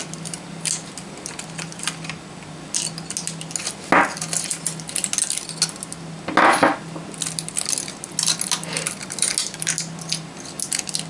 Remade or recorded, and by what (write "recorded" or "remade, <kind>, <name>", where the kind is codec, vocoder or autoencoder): recorded